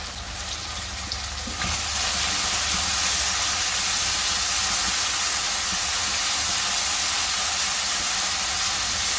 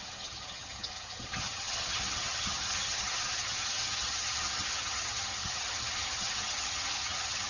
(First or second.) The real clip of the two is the first